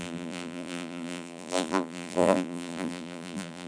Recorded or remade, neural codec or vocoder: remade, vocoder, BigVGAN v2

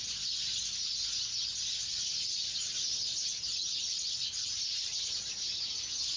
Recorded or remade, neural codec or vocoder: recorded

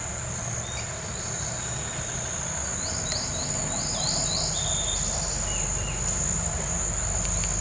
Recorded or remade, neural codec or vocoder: recorded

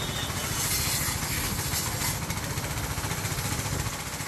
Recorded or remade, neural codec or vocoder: recorded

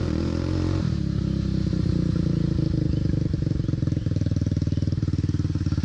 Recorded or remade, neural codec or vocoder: remade, vocoder, BigVGAN v2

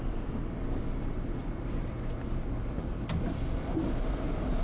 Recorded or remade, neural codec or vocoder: recorded